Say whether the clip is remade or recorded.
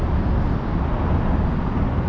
recorded